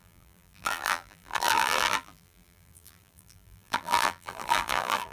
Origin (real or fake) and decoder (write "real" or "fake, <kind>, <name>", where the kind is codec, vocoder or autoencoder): fake, vocoder, BigVGAN v2